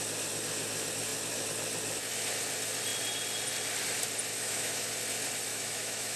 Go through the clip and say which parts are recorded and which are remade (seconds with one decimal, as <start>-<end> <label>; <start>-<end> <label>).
0.0-4.3 recorded; 4.3-4.9 remade; 4.9-5.5 recorded; 5.5-6.2 remade